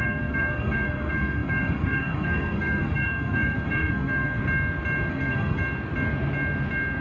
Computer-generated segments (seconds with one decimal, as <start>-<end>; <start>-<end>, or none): 0.0-4.4; 5.1-5.6